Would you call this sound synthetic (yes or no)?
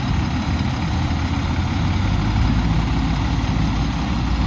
no